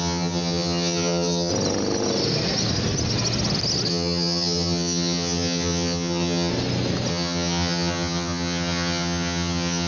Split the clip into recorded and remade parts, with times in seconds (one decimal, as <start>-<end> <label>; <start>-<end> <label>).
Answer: 0.0-1.5 remade; 1.5-3.9 recorded; 3.9-6.5 remade; 6.5-7.1 recorded; 7.1-9.9 remade